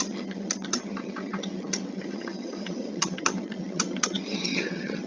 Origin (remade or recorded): remade